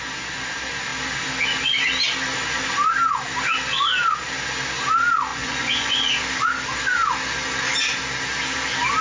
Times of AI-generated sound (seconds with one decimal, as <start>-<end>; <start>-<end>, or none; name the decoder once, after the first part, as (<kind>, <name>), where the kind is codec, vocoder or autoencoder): 5.3-6.1 (vocoder, Vocos)